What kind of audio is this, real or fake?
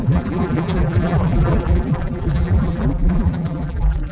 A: fake